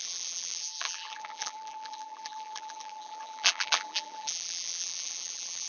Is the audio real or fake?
fake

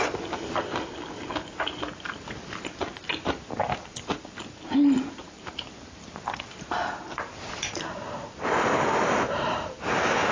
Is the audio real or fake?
fake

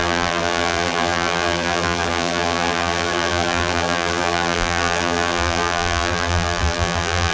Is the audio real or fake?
fake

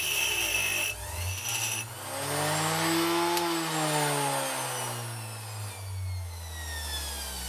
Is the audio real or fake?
real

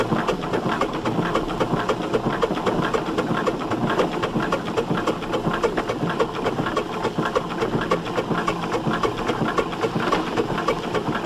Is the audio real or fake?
real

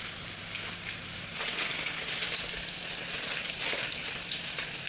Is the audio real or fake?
real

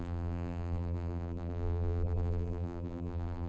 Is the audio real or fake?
fake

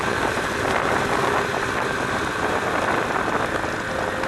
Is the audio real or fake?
real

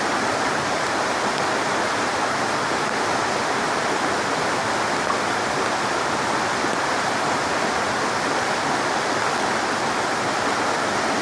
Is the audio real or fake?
real